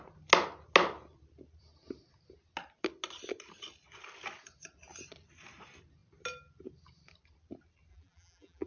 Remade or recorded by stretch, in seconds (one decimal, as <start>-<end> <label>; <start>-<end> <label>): 0.0-7.9 recorded; 7.9-8.7 remade